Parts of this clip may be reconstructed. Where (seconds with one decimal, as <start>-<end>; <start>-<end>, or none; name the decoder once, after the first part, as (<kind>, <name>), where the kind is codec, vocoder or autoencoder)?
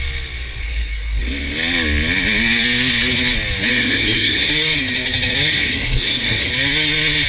0.6-1.2 (codec, SNAC); 3.7-4.5; 5.5-6.5